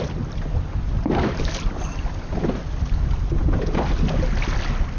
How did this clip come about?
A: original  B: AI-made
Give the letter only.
A